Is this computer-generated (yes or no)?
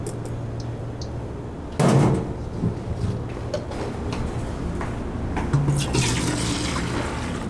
no